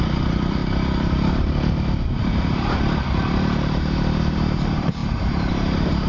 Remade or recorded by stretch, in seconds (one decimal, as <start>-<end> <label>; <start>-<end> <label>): 0.0-6.1 remade